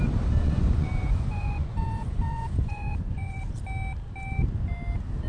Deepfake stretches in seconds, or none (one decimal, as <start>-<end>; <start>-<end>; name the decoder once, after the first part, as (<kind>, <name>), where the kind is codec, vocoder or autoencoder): 0.4-3.4 (vocoder, Vocos)